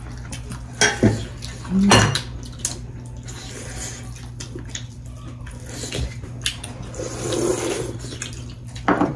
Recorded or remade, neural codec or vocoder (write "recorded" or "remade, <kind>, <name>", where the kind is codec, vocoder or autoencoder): recorded